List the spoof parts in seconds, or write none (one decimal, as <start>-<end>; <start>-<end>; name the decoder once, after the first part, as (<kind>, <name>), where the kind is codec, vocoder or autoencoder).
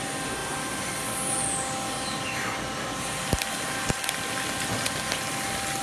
none